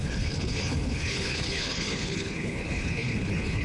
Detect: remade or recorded remade